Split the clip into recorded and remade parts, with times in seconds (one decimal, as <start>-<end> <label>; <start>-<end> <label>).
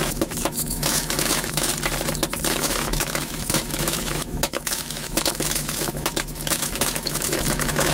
0.0-1.7 remade; 1.7-2.5 recorded; 2.5-7.9 remade